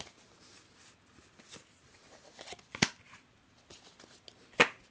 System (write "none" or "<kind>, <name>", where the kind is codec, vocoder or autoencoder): none